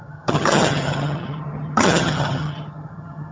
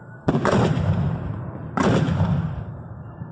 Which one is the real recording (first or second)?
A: second